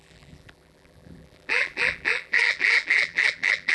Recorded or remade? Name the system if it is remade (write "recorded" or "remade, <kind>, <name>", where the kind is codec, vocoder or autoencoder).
remade, vocoder, BigVGAN v2